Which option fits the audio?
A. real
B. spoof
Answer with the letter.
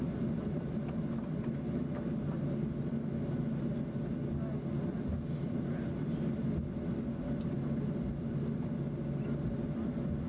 A